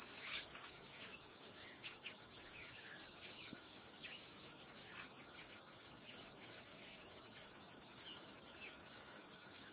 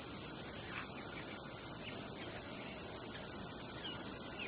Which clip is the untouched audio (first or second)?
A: second